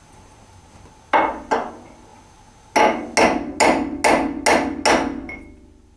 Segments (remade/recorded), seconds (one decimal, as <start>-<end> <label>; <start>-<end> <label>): 0.0-6.0 recorded